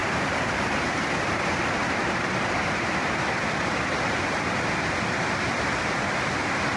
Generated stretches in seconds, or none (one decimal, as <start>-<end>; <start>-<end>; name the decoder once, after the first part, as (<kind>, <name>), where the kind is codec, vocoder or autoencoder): 0.0-4.1 (vocoder, BigVGAN v2)